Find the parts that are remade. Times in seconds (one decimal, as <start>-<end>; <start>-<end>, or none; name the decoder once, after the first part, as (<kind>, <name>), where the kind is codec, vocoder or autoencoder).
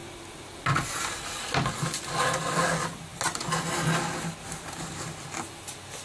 none